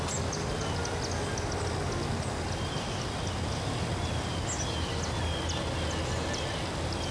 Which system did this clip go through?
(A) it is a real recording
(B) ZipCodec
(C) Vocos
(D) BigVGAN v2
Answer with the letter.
A